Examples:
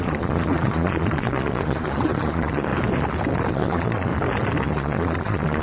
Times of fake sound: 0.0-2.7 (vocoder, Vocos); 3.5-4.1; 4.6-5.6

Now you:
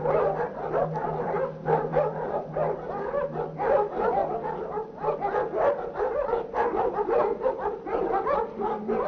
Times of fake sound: none

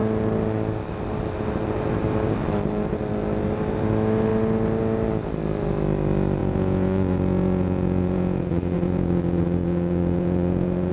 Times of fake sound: 6.4-10.9 (vocoder, Vocos)